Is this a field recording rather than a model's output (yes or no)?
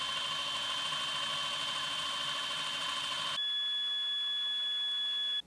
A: yes